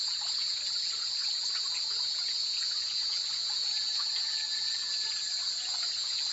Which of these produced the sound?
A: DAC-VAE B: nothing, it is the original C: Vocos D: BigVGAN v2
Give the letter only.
C